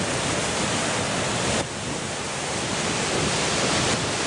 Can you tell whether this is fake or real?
real